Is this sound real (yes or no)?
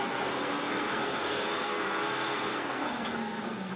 no